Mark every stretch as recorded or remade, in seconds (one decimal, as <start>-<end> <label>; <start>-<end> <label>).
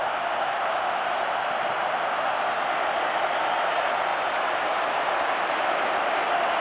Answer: 0.0-4.1 recorded; 4.1-5.5 remade; 5.5-6.6 recorded